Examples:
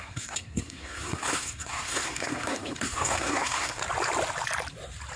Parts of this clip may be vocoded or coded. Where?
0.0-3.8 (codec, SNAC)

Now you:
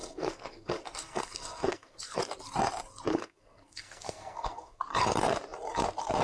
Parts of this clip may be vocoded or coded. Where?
0.0-2.2 (codec, SNAC); 3.1-4.8

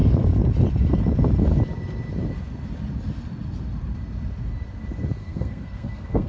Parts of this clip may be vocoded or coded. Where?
5.2-6.3 (codec, SNAC)

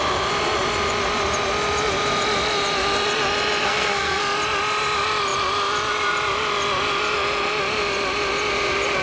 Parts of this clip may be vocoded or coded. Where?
3.6-4.2 (codec, SNAC)

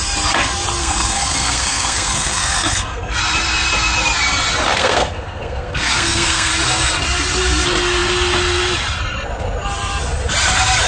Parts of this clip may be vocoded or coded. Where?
0.8-3.2 (codec, SNAC); 4.8-6.5